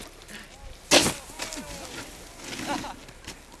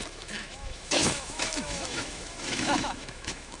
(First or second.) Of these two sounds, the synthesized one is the second